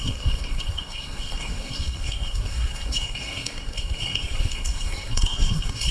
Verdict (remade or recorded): remade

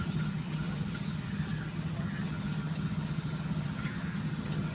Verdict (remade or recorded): remade